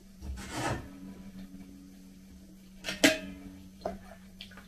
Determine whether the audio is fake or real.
real